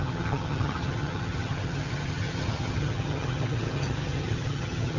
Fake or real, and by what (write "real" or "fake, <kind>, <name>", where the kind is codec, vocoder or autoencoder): fake, vocoder, HiFi-GAN